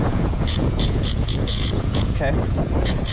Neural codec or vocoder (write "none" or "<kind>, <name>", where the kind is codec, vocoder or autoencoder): vocoder, Vocos